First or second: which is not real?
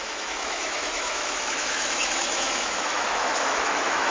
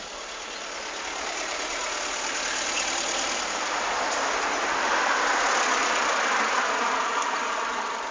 first